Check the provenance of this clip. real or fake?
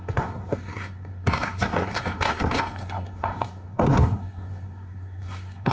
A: fake